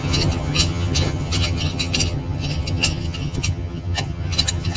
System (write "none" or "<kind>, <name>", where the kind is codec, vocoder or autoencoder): vocoder, HiFi-GAN